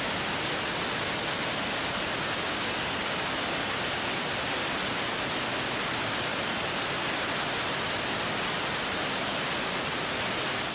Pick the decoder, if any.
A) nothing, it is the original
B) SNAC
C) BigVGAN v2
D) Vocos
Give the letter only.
A